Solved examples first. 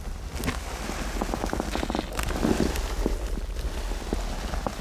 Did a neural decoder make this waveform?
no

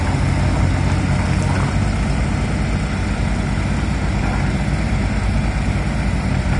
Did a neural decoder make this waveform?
no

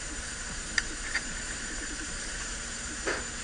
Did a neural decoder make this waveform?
yes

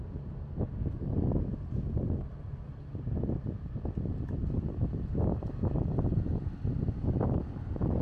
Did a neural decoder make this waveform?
no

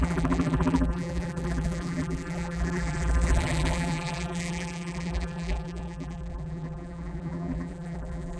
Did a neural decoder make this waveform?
yes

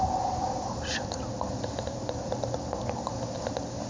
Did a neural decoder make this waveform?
no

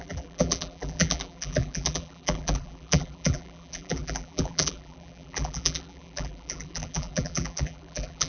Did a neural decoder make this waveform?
yes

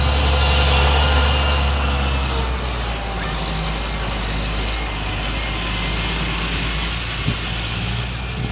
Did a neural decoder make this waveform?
no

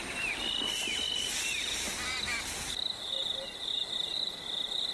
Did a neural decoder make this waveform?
yes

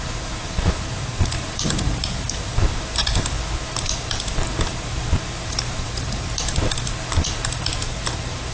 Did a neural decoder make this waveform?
yes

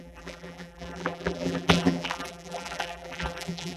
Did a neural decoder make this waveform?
yes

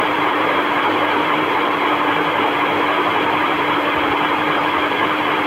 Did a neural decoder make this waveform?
yes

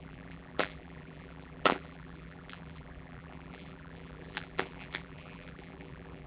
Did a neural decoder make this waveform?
yes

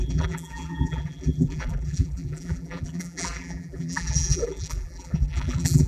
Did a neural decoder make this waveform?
yes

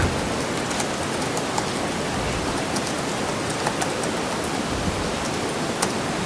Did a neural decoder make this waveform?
no